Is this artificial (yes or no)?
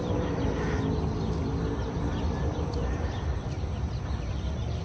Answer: no